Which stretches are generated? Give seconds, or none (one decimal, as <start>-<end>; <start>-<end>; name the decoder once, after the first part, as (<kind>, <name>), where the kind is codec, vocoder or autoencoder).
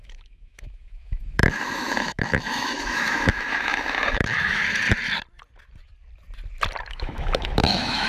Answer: 0.0-4.6 (autoencoder, DAC-VAE); 6.9-8.1